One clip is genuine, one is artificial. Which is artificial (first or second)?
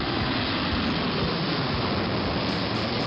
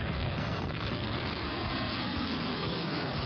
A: second